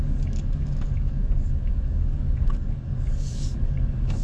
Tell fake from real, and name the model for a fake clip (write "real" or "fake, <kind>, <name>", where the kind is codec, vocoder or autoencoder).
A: fake, codec, DAC